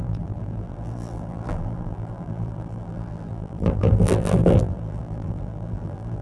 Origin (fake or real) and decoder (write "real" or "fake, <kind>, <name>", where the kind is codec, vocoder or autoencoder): fake, vocoder, BigVGAN v2